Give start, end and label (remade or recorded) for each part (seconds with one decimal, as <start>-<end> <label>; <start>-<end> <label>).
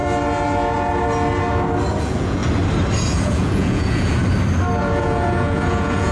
0.0-2.0 recorded; 2.0-2.4 remade; 2.4-3.1 recorded; 3.1-4.2 remade; 4.2-4.8 recorded; 4.8-6.1 remade